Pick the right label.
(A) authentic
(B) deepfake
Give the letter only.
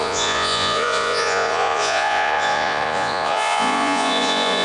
B